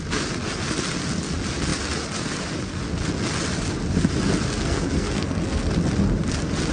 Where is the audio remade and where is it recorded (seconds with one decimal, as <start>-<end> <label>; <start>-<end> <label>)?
0.0-4.6 recorded; 4.6-5.7 remade; 5.7-6.7 recorded